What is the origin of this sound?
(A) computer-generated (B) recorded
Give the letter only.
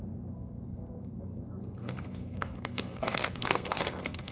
A